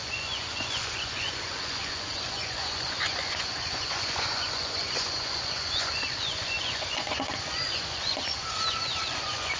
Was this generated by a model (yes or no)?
yes